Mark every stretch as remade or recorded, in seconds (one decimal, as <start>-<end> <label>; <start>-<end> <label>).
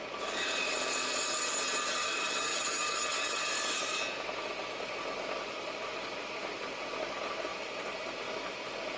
0.0-2.0 recorded; 2.0-3.5 remade; 3.5-9.0 recorded